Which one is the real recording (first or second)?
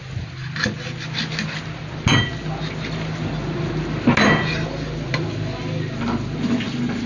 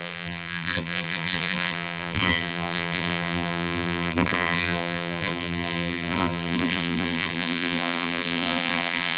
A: first